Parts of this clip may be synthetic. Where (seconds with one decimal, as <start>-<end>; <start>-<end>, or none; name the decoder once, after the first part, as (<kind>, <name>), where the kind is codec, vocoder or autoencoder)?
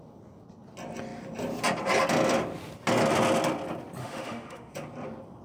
4.0-4.7 (autoencoder, DAC-VAE)